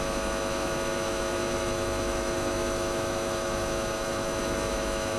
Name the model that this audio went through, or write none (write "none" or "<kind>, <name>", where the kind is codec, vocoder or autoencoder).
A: autoencoder, DAC-VAE